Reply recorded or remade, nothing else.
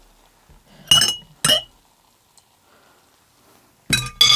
recorded